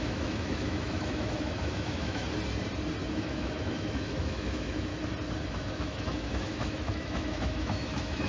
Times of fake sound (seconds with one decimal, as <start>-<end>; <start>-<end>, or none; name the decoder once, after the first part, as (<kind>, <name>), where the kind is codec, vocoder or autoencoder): 0.0-2.2 (autoencoder, DAC-VAE); 3.1-4.9; 5.5-8.3